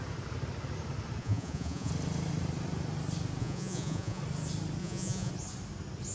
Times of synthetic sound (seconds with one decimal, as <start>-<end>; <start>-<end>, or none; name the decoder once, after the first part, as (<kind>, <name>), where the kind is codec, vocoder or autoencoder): 1.2-1.9 (vocoder, Vocos); 3.4-4.2; 4.8-5.3